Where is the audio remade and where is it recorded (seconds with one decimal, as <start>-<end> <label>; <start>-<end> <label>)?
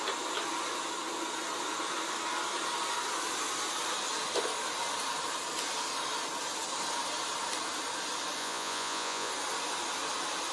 0.0-8.4 recorded; 8.4-9.3 remade; 9.3-10.5 recorded